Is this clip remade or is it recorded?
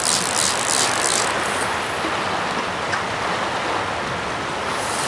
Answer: recorded